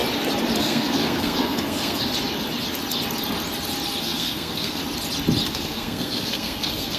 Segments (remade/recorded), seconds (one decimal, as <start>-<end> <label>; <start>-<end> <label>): 0.0-0.6 recorded; 0.6-2.1 remade; 2.1-4.0 recorded; 4.0-4.8 remade; 4.8-5.5 recorded; 5.5-7.0 remade